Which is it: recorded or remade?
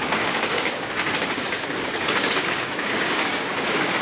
remade